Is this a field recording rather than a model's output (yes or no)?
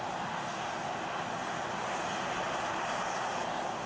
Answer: yes